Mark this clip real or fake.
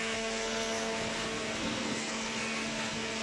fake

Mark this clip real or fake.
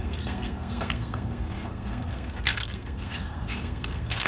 fake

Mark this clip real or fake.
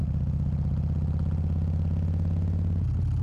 real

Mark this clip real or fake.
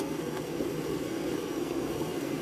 fake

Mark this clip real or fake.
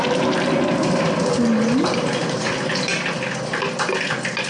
real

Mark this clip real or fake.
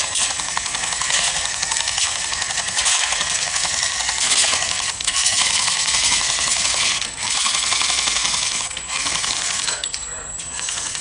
fake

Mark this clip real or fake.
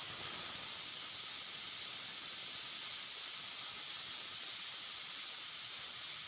real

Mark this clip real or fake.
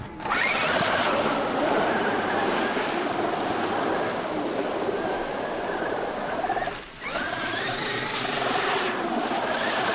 real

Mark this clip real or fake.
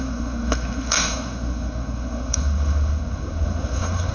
fake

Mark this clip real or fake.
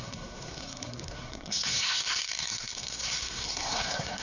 fake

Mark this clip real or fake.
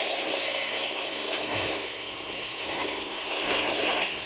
fake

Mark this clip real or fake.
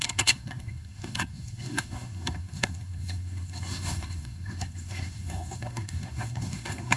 fake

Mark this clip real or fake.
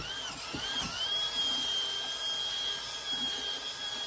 real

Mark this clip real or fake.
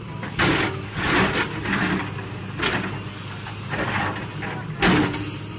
real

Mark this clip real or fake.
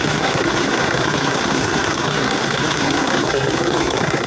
fake